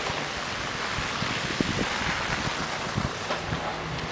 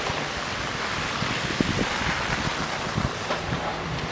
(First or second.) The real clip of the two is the first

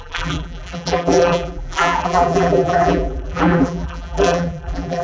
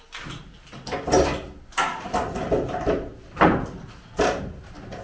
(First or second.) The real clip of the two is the second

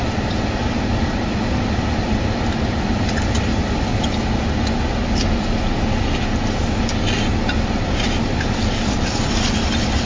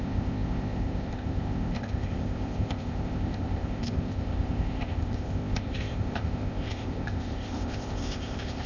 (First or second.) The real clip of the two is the first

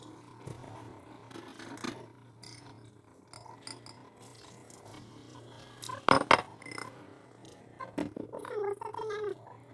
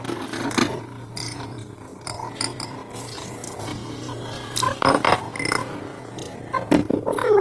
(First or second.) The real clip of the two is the first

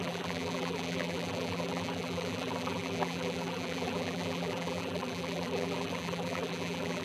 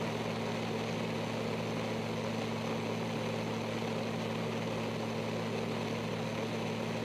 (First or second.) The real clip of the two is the second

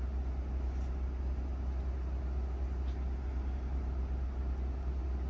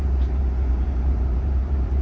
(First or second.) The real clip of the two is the first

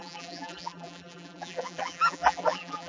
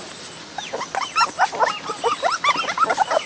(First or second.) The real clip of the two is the second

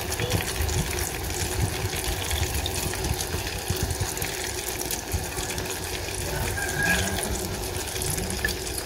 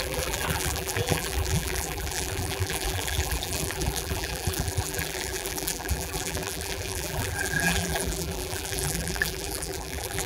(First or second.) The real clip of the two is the first